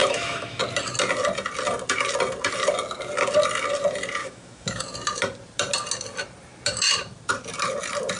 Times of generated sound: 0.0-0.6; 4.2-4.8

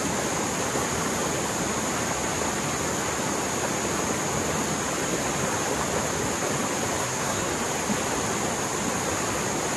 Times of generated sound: 7.0-7.5

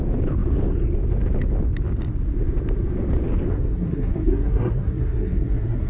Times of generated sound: 3.5-5.9

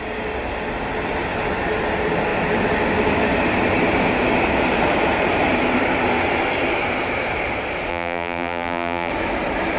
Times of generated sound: 7.9-9.1

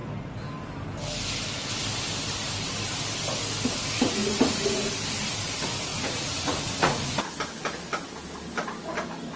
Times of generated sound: 4.2-4.9; 5.9-7.2

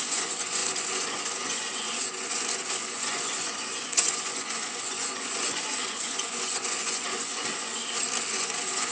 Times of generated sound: 0.0-7.8; 8.3-8.9